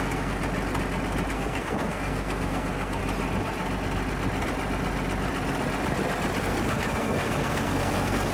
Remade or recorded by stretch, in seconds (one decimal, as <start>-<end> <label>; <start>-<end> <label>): 0.0-0.4 remade; 0.4-1.3 recorded; 1.3-3.0 remade; 3.0-6.4 recorded; 6.4-8.3 remade